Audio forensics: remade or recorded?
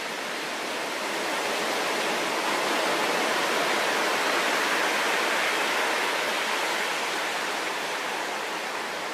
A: recorded